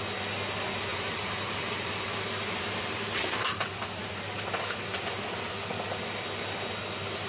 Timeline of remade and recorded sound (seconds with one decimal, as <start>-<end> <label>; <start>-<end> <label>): 0.0-0.9 recorded; 0.9-5.3 remade; 5.3-7.3 recorded